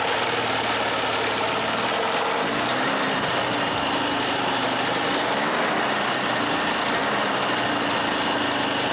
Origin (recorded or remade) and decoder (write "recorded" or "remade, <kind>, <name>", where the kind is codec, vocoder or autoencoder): recorded